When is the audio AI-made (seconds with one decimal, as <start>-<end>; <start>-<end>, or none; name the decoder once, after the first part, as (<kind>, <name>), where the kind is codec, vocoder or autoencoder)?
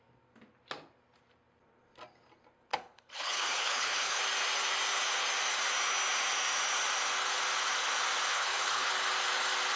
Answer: 2.7-4.2 (codec, HILCodec); 8.3-8.9